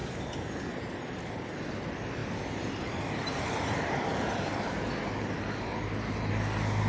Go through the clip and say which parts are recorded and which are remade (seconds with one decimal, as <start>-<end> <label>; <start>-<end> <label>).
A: 0.0-6.9 recorded